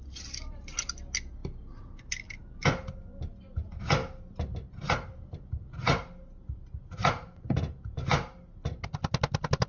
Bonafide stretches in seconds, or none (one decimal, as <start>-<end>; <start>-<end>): 0.0-9.7